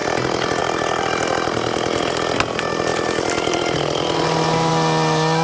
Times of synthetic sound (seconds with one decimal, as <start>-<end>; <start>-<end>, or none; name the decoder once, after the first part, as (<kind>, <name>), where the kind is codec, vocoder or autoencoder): none